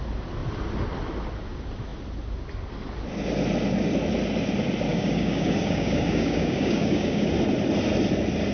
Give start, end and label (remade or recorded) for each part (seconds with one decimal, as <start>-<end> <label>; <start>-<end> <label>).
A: 0.0-4.9 recorded; 4.9-7.3 remade; 7.3-8.5 recorded